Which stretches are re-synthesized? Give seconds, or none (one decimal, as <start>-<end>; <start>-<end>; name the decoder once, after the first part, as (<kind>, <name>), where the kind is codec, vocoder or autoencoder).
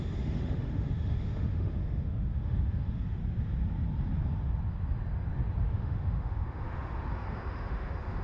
0.0-3.2 (autoencoder, DAC-VAE); 5.7-8.2